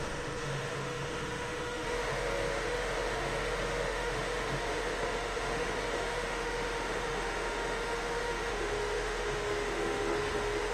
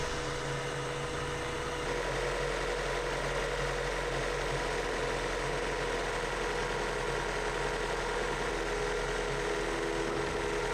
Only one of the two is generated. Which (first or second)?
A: first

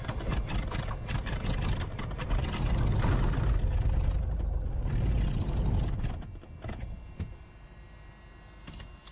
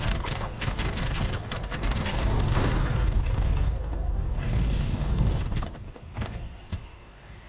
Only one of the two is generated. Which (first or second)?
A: second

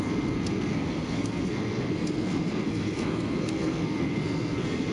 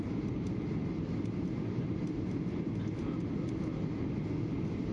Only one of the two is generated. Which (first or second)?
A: first